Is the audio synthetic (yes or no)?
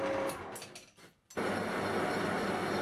no